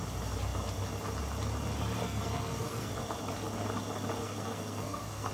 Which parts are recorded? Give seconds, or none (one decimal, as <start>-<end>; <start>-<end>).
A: 0.0-2.0; 2.9-4.2